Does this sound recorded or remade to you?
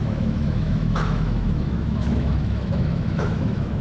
remade